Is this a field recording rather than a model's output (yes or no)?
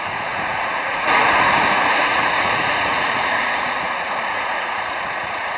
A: no